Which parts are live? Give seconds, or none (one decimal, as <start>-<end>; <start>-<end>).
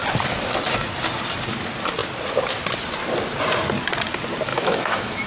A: 0.0-4.5